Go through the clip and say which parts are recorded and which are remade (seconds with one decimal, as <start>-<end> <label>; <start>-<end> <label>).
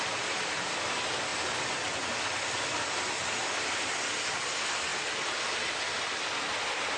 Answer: 0.0-7.0 recorded